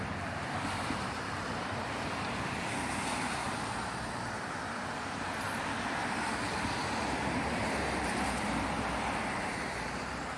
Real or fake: fake